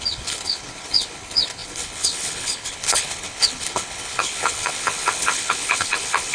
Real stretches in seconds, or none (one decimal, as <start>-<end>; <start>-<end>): none

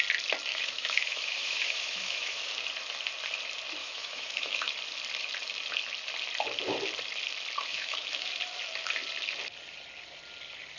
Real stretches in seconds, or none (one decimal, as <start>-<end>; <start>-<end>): 0.0-0.5; 2.5-3.8; 4.7-7.7; 8.3-10.8

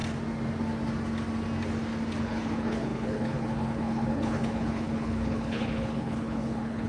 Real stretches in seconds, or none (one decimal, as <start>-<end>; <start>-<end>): 0.0-2.2

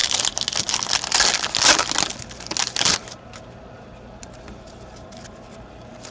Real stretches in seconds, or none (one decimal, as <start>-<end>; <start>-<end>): 0.0-6.1

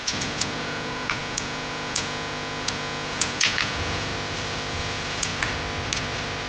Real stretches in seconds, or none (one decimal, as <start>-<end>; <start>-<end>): 4.1-4.7; 5.3-6.5

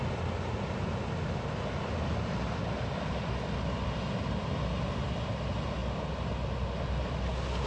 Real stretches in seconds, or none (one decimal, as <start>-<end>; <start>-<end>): 0.0-7.7